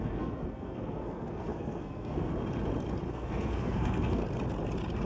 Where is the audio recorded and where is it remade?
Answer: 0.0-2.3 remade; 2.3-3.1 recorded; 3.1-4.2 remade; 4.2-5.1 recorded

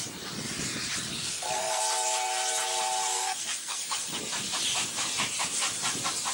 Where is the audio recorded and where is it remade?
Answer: 0.0-1.2 recorded; 1.2-1.8 remade; 1.8-3.1 recorded; 3.1-4.2 remade; 4.2-6.3 recorded

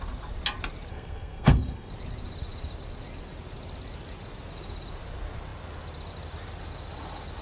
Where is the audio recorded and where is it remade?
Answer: 0.0-0.9 recorded; 0.9-1.9 remade; 1.9-7.4 recorded

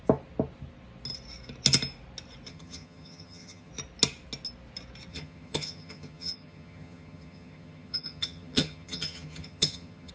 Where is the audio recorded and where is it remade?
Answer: 0.0-2.5 recorded; 2.5-3.7 remade; 3.7-5.1 recorded; 5.1-10.1 remade

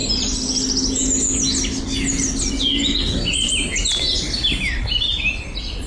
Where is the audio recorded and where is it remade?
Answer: 0.0-5.9 recorded

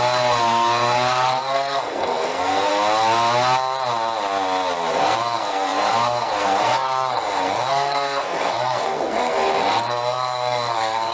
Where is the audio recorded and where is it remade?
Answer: 0.0-2.7 remade; 2.7-4.9 recorded; 4.9-11.1 remade

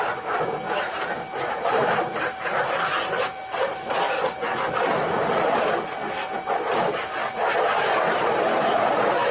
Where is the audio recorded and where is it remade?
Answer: 0.0-1.8 recorded; 1.8-3.0 remade; 3.0-9.3 recorded

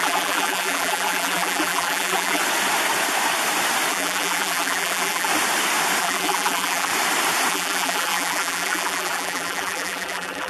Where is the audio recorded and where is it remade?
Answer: 0.0-2.4 remade; 2.4-3.9 recorded; 3.9-5.3 remade; 5.3-6.0 recorded; 6.0-6.9 remade; 6.9-7.5 recorded; 7.5-10.5 remade